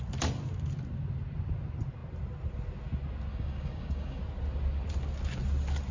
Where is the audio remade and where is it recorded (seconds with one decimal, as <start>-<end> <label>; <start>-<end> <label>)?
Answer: 0.0-3.3 recorded; 3.3-4.2 remade; 4.2-5.9 recorded